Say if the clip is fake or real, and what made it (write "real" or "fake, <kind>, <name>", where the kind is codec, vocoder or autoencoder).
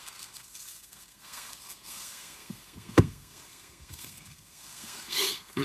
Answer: fake, codec, SNAC